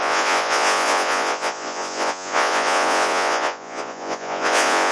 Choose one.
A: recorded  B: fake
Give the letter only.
B